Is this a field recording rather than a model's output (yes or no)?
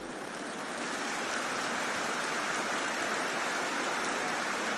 yes